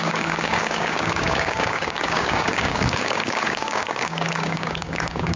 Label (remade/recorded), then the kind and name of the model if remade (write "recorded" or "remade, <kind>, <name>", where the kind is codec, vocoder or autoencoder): remade, codec, DAC